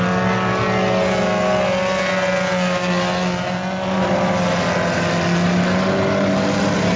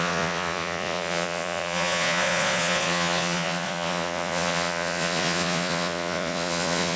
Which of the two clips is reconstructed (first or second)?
second